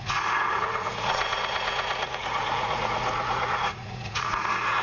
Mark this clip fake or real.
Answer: fake